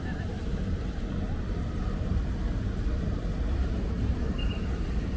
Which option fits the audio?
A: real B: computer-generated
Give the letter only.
B